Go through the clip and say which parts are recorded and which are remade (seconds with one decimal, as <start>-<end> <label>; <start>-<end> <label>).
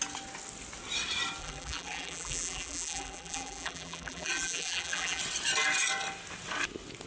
0.0-1.4 recorded; 1.4-5.2 remade; 5.2-7.1 recorded